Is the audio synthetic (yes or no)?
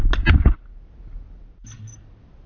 no